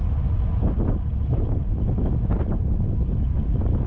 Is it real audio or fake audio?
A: real